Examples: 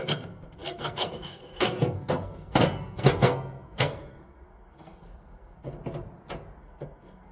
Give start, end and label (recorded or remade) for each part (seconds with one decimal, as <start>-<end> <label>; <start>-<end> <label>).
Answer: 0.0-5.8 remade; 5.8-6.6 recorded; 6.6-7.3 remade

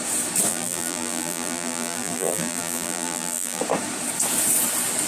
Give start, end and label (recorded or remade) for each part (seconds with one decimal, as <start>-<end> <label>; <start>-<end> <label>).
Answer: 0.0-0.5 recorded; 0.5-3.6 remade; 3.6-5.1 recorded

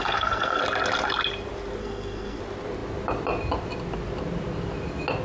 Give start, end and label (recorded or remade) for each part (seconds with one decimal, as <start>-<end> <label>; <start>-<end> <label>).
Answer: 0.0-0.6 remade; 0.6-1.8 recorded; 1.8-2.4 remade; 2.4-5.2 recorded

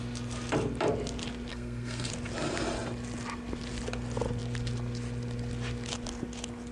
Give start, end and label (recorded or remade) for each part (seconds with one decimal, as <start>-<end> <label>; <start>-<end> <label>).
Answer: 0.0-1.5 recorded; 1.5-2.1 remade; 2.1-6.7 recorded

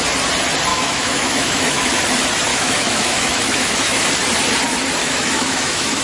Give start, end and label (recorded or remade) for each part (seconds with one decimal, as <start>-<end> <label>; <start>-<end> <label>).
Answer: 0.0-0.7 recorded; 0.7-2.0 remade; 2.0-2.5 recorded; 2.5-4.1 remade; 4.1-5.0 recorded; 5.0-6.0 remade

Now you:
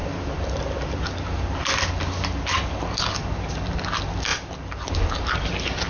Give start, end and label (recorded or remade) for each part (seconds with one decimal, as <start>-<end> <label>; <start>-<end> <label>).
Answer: 0.0-5.9 recorded

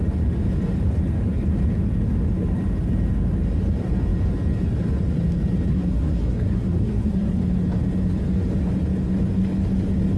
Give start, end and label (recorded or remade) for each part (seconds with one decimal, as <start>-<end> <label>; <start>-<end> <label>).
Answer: 0.0-5.7 recorded; 5.7-7.4 remade; 7.4-10.2 recorded